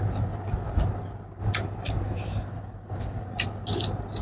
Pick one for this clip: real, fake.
real